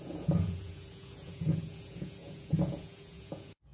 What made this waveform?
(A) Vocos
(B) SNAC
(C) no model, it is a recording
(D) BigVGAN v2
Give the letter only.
A